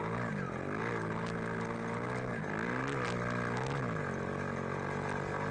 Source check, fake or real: real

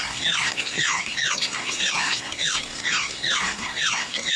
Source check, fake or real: fake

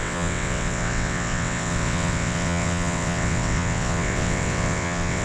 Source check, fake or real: fake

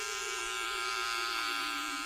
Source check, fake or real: fake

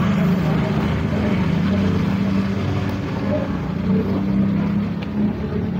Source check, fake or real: real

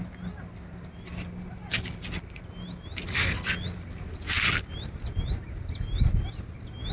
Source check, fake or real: real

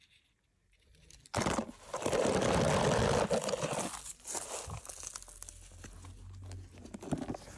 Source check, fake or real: real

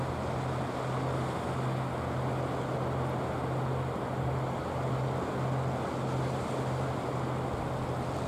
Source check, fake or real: real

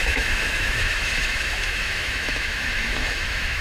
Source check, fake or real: fake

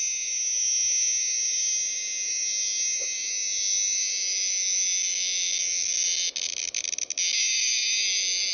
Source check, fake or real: real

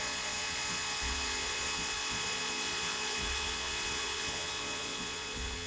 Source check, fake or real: fake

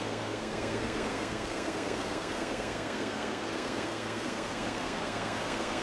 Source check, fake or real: fake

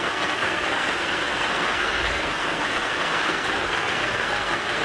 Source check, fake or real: fake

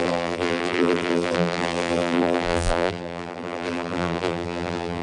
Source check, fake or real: fake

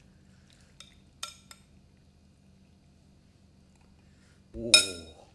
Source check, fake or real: real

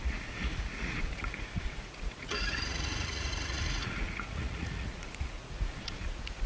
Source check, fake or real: fake